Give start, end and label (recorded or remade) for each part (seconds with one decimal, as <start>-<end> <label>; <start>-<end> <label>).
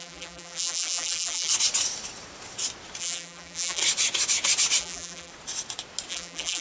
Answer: 0.0-1.5 remade; 1.5-3.0 recorded; 3.0-3.8 remade; 3.8-4.8 recorded; 4.8-5.3 remade; 5.3-6.1 recorded; 6.1-6.6 remade